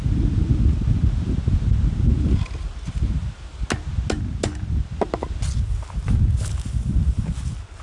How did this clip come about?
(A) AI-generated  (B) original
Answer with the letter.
B